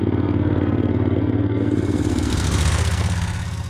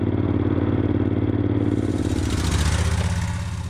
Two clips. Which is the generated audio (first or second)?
first